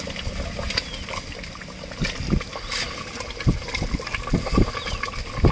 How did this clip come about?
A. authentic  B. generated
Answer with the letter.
A